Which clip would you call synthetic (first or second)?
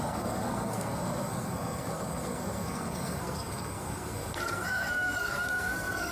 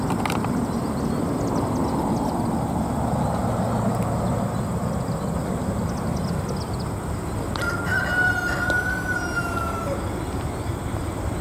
first